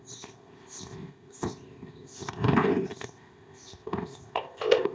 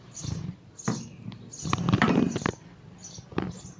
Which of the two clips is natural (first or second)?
second